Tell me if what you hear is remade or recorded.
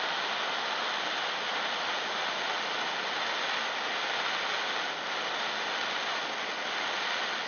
recorded